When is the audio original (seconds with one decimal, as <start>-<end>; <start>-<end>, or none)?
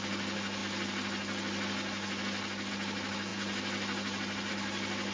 0.0-5.1